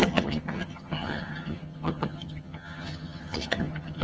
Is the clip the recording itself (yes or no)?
no